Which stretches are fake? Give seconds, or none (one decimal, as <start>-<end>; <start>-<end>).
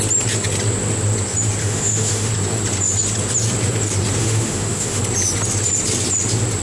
1.6-2.3; 4.2-5.0